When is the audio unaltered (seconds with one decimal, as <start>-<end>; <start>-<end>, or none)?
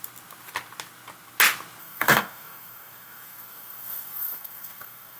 0.0-1.8